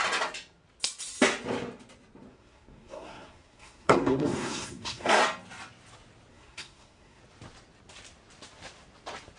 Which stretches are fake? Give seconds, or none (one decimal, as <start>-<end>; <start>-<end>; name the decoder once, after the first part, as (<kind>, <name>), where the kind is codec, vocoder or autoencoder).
2.3-5.2 (codec, SNAC); 6.3-7.2